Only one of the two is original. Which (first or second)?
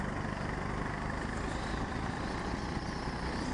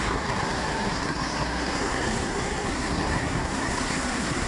first